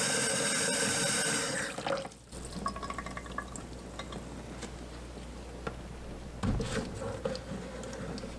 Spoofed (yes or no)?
no